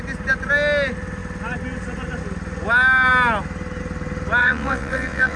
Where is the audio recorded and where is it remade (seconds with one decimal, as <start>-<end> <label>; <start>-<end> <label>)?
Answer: 0.0-4.4 recorded; 4.4-5.4 remade